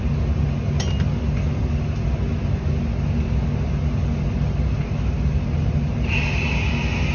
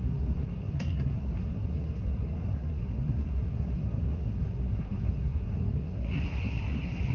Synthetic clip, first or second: second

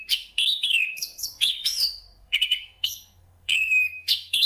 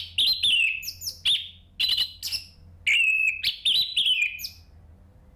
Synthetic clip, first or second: first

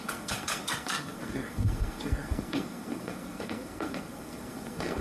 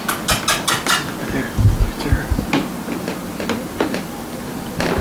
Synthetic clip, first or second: first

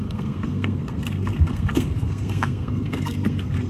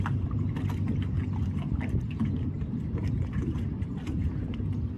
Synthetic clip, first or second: first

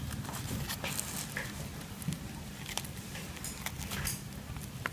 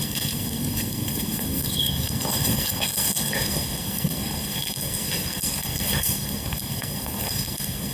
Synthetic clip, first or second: second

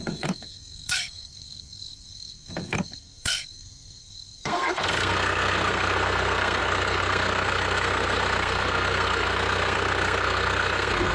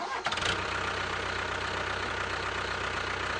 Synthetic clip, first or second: first